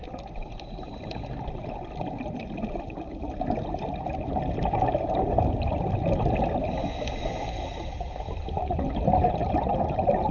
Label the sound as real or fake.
real